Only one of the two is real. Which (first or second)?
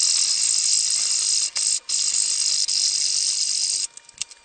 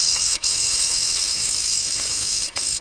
first